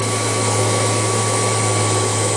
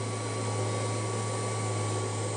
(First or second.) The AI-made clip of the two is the first